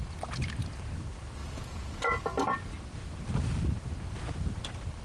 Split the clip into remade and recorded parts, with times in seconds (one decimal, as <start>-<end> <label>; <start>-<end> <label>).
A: 0.0-1.4 recorded; 1.4-2.2 remade; 2.2-5.0 recorded